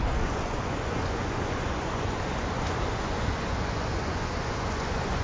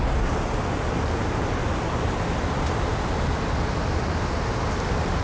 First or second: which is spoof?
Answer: first